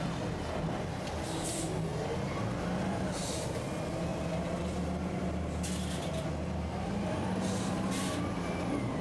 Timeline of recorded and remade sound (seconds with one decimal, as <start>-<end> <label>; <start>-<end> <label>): 0.0-9.0 recorded